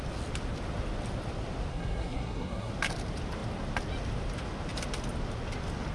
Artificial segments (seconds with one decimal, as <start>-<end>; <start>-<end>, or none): 1.7-2.7